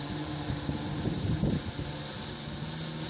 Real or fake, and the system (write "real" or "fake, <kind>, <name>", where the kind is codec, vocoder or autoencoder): real